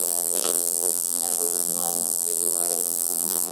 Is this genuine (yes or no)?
no